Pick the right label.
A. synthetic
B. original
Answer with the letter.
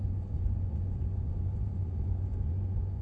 A